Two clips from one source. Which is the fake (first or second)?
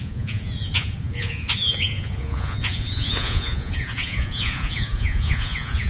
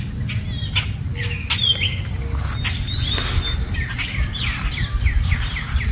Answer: first